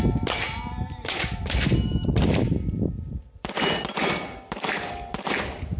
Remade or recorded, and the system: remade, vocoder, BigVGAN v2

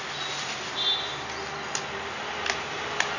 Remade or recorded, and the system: recorded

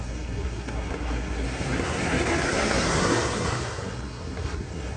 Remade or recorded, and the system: remade, codec, SNAC